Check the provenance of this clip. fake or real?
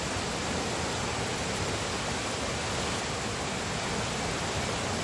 real